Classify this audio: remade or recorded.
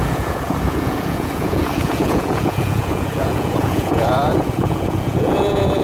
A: remade